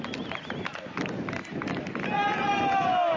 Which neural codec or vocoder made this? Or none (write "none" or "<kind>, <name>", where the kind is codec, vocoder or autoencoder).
none